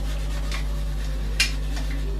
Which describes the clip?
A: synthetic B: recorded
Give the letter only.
B